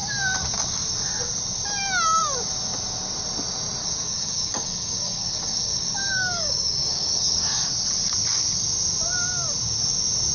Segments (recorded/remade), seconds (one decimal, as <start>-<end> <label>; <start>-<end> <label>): 0.0-3.8 recorded; 3.8-7.7 remade; 7.7-10.3 recorded

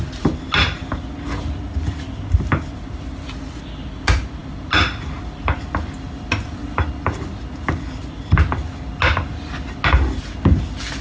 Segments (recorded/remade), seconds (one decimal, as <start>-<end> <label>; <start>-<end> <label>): 0.0-11.0 recorded

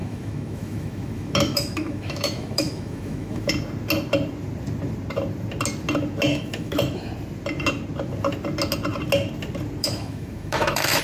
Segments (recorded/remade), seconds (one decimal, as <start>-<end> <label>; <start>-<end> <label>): 0.0-3.5 remade; 3.5-6.3 recorded; 6.3-7.1 remade; 7.1-9.8 recorded; 9.8-11.0 remade

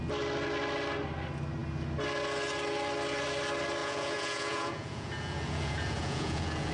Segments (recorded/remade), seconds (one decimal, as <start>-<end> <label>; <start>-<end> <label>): 0.0-3.8 recorded; 3.8-6.7 remade

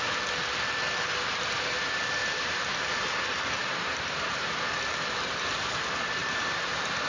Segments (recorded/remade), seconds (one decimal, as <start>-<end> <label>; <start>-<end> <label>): 0.0-2.2 recorded; 2.2-4.6 remade; 4.6-6.2 recorded; 6.2-7.1 remade

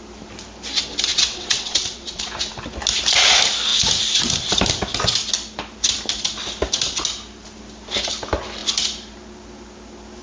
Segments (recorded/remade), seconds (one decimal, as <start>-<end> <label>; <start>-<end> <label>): 0.0-1.1 recorded; 1.1-2.2 remade; 2.2-10.2 recorded

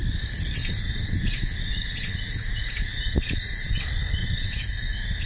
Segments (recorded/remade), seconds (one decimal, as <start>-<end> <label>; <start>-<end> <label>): 0.0-0.6 recorded; 0.6-3.8 remade; 3.8-4.2 recorded; 4.2-5.3 remade